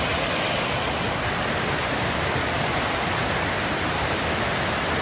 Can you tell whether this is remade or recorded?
recorded